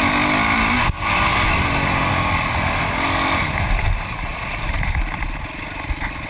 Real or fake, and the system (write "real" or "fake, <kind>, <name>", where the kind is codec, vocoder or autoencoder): real